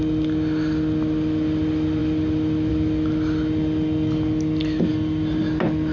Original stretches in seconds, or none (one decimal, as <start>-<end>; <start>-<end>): 0.0-5.9